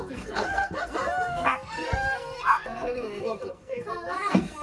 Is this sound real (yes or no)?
no